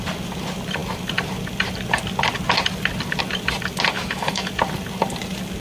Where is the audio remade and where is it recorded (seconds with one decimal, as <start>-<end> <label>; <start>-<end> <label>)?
0.0-3.9 recorded; 3.9-4.5 remade; 4.5-5.6 recorded